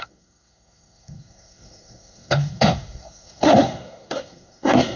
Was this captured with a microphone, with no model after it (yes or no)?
no